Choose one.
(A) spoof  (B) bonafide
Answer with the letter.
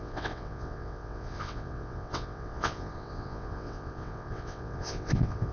A